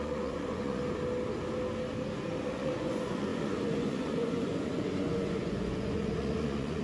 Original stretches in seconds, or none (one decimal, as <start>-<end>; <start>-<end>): 0.8-2.4